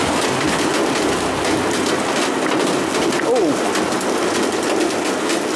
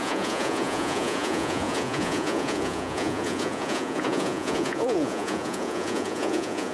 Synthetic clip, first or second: second